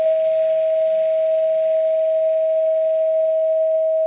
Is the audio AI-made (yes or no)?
no